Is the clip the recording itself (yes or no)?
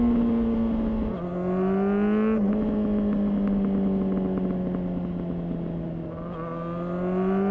yes